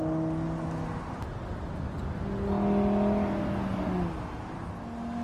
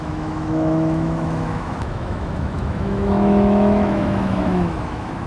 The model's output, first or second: second